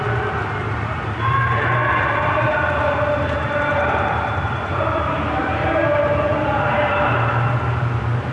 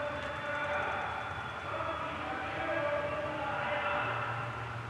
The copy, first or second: first